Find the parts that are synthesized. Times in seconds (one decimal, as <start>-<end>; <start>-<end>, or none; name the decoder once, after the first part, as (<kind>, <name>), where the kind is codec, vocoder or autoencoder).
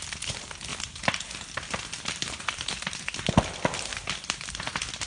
none